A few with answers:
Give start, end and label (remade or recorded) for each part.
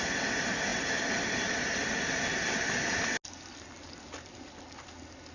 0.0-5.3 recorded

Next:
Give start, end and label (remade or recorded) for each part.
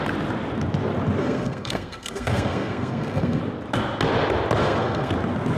0.0-1.2 recorded; 1.2-3.4 remade; 3.4-4.6 recorded; 4.6-5.1 remade; 5.1-5.6 recorded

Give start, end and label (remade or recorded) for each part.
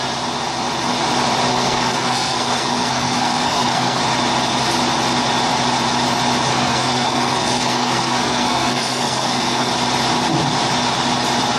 0.0-1.5 recorded; 1.5-4.0 remade; 4.0-6.5 recorded; 6.5-9.7 remade; 9.7-11.6 recorded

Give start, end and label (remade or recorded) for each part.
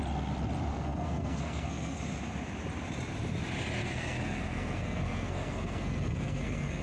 0.0-0.7 recorded; 0.7-2.0 remade; 2.0-3.8 recorded; 3.8-6.8 remade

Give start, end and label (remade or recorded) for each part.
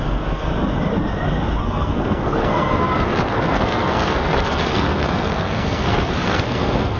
0.0-0.5 remade; 0.5-1.6 recorded; 1.6-7.0 remade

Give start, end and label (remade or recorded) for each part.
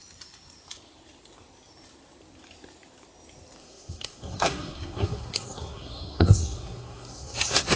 0.0-3.6 recorded; 3.6-7.8 remade